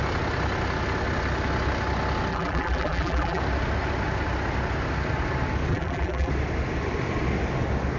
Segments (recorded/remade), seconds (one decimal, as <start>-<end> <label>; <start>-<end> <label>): 0.0-2.3 recorded; 2.3-3.4 remade; 3.4-5.7 recorded; 5.7-6.3 remade; 6.3-8.0 recorded